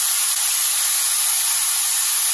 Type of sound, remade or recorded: recorded